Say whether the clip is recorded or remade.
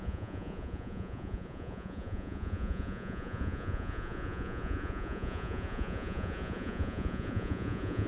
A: remade